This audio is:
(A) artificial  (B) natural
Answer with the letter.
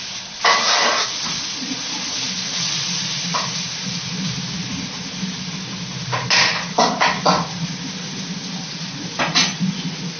B